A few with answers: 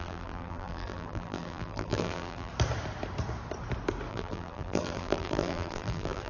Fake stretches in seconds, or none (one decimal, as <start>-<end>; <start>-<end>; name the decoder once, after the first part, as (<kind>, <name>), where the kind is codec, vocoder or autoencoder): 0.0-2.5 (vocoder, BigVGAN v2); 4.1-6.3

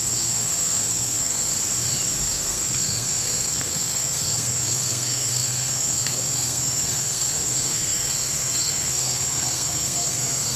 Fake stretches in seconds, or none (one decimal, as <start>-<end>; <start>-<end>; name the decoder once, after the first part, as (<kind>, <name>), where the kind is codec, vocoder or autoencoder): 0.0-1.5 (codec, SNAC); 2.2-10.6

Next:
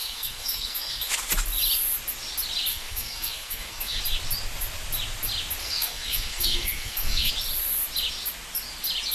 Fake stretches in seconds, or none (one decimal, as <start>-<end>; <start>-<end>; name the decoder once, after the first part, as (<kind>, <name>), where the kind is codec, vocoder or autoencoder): 0.0-1.1 (codec, SNAC); 2.7-4.0; 5.6-7.3

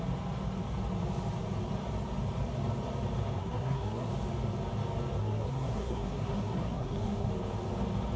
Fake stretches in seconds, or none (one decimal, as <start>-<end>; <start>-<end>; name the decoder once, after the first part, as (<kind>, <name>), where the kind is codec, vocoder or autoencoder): 3.4-4.1 (codec, SNAC); 5.2-7.3

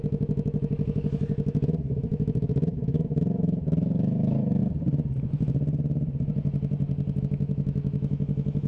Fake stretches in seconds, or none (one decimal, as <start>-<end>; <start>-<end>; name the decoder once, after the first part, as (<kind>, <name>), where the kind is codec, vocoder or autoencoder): 0.0-4.6 (autoencoder, DAC-VAE); 7.2-8.7